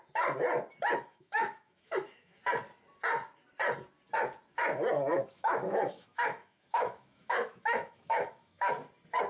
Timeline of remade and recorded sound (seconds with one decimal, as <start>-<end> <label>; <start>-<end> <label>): 0.0-1.1 recorded; 1.1-2.4 remade; 2.4-5.1 recorded; 5.1-8.7 remade; 8.7-9.3 recorded